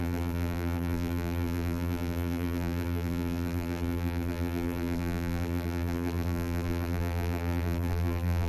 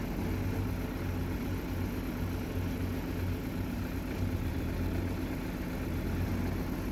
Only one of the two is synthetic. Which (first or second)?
first